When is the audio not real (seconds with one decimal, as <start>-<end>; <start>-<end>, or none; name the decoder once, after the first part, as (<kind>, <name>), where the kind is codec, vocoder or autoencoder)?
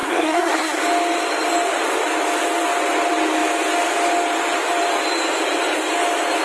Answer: 0.0-0.8 (codec, SNAC)